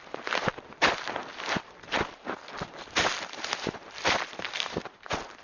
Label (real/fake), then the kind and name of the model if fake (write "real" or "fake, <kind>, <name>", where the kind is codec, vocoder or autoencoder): real